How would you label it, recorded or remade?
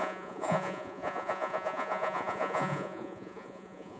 remade